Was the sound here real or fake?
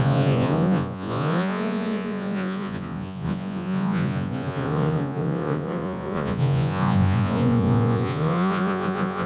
fake